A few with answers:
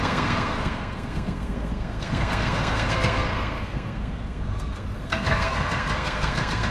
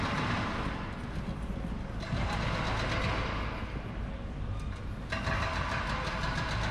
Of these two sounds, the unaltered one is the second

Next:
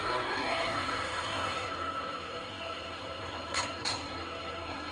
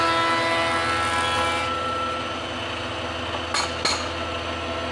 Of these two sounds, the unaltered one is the second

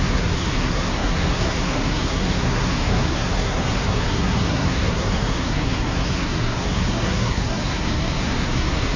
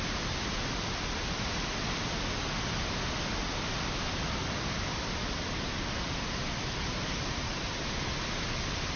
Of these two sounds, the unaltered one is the second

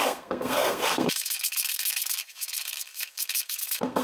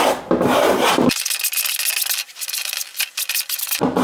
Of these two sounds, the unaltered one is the second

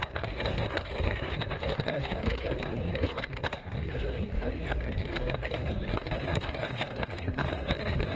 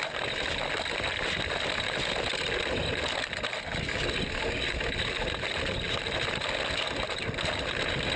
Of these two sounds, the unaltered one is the second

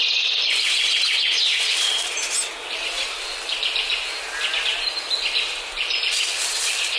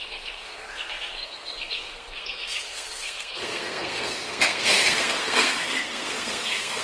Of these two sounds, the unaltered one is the first